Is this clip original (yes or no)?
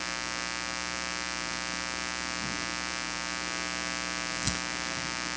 yes